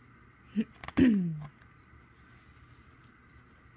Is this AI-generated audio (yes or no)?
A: no